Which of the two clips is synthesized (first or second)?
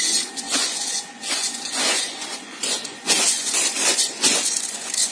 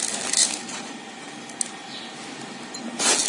first